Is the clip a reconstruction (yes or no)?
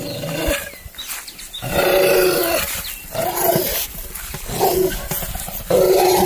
no